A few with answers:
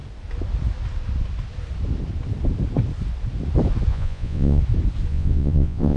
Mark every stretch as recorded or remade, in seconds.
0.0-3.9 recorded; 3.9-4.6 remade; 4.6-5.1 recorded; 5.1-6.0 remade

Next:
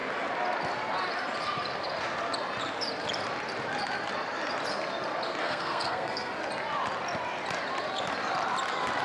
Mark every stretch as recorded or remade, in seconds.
0.0-5.4 recorded; 5.4-6.3 remade; 6.3-9.0 recorded

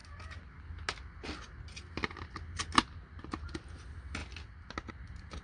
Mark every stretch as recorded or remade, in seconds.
0.0-5.4 recorded

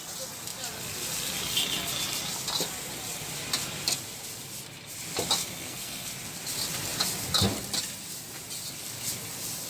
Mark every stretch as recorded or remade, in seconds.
0.0-5.4 recorded; 5.4-6.1 remade; 6.1-9.7 recorded

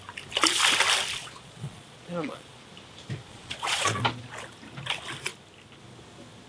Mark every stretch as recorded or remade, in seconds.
0.0-1.2 recorded; 1.2-2.7 remade; 2.7-3.3 recorded; 3.3-4.0 remade; 4.0-6.5 recorded